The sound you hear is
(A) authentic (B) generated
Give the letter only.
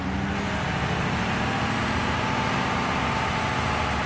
A